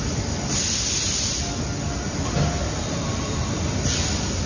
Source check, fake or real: real